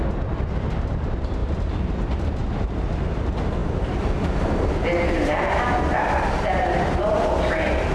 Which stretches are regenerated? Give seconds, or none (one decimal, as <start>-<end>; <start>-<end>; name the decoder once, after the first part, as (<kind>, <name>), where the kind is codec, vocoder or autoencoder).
1.4-1.9 (vocoder, BigVGAN v2)